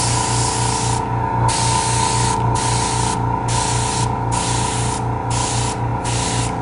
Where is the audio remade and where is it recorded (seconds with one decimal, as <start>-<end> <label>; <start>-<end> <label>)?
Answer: 0.0-6.6 recorded